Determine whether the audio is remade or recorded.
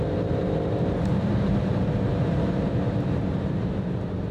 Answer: remade